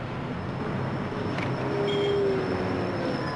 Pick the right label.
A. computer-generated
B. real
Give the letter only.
B